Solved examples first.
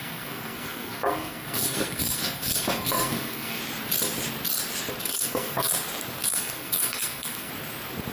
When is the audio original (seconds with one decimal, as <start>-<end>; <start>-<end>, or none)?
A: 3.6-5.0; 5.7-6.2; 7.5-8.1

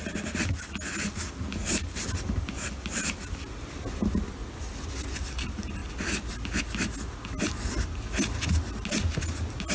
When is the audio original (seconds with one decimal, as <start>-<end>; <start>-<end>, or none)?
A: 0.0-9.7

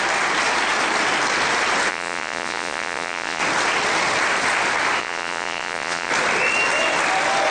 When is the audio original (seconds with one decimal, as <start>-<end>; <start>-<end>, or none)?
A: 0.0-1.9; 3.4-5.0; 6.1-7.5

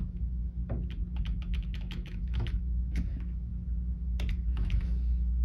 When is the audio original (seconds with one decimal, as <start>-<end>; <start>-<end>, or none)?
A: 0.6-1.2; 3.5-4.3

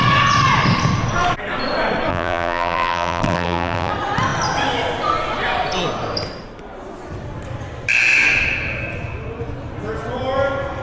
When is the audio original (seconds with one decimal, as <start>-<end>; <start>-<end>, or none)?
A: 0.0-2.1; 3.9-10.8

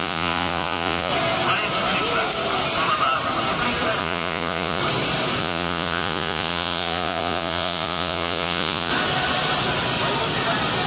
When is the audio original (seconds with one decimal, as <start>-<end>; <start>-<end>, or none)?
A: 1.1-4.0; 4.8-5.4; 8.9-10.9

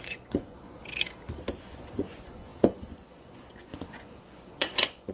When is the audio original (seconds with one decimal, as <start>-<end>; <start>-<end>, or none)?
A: 0.8-1.6